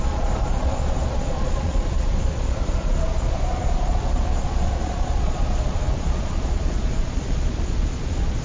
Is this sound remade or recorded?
remade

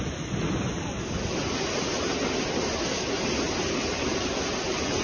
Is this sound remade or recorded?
recorded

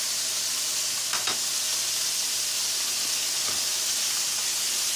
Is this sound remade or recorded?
recorded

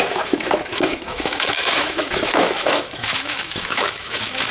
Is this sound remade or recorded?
remade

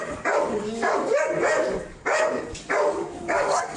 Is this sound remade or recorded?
remade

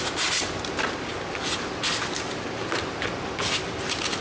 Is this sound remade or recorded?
recorded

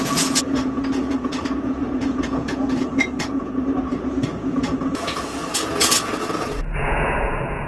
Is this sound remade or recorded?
remade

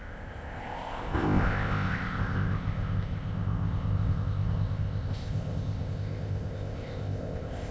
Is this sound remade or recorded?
remade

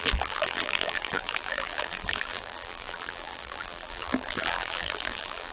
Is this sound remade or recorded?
remade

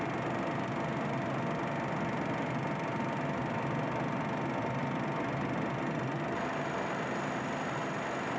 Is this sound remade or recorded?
recorded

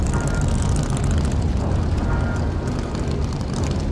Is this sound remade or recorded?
recorded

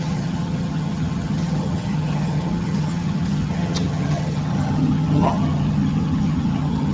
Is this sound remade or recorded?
remade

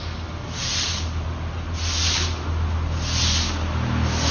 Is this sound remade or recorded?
recorded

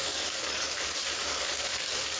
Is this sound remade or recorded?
remade